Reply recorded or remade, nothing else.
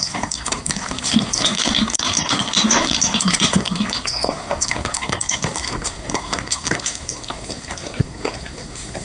remade